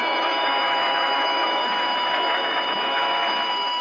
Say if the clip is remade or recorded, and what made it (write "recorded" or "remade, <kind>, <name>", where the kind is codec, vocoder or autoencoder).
remade, autoencoder, DAC-VAE